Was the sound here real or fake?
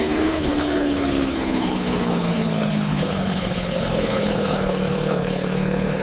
fake